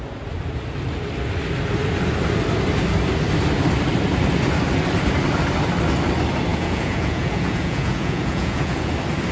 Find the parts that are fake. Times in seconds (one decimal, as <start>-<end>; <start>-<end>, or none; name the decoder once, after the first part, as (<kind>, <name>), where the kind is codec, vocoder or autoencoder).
6.5-8.9 (vocoder, Vocos)